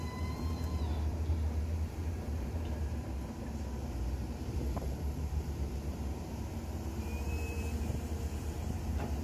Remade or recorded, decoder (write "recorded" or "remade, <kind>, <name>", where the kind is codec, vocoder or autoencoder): remade, vocoder, BigVGAN v2